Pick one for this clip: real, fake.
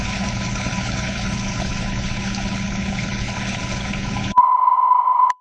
fake